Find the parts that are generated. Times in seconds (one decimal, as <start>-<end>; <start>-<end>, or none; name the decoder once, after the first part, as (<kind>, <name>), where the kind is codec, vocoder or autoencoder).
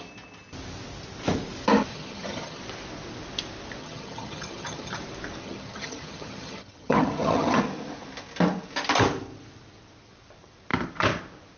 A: 1.9-2.6 (vocoder, HiFi-GAN); 3.8-5.0; 5.4-7.6